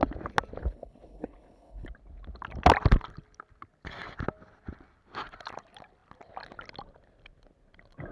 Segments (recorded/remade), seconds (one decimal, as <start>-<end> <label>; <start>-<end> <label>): 0.0-0.6 recorded; 0.6-1.9 remade; 1.9-8.1 recorded